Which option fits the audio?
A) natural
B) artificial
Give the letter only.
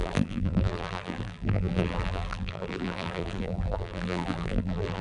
B